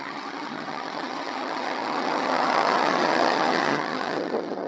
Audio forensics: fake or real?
fake